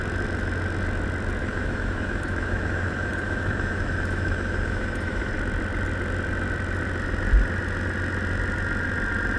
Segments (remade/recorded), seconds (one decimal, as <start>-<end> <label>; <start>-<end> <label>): 0.0-1.4 recorded; 1.4-5.3 remade; 5.3-9.4 recorded